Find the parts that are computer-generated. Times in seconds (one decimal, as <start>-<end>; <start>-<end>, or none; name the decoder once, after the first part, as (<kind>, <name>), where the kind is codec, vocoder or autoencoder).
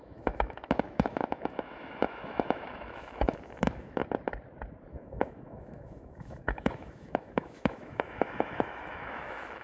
0.0-4.0 (autoencoder, DAC-VAE); 4.9-9.6